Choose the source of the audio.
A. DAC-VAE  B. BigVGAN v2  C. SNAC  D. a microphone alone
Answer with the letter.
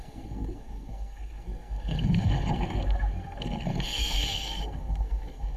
C